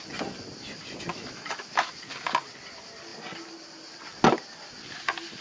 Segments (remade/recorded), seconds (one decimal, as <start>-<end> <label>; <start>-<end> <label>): 0.0-1.1 recorded; 1.1-1.9 remade; 1.9-5.4 recorded